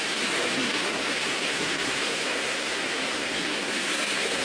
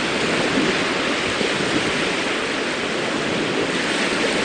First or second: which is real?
second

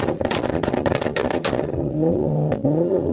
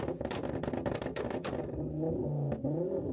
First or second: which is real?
second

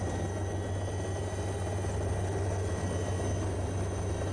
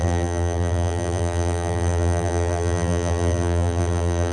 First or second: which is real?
first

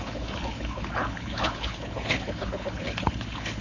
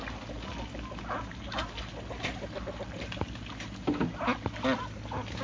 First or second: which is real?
second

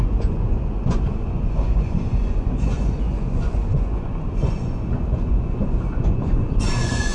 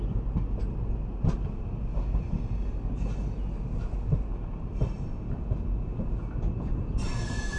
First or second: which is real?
second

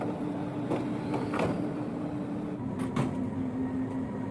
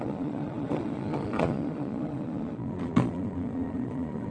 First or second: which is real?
first